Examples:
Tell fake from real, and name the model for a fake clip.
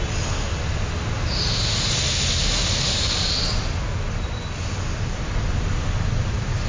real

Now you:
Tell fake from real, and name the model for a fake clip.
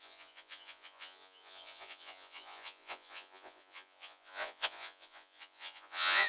fake, vocoder, Vocos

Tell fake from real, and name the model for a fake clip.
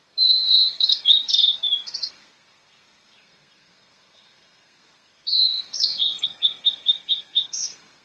fake, codec, SNAC